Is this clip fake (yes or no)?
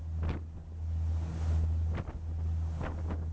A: no